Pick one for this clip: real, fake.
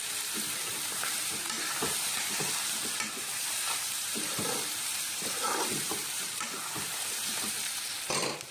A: fake